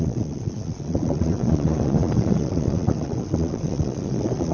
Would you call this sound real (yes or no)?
no